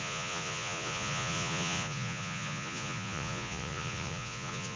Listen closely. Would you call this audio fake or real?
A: fake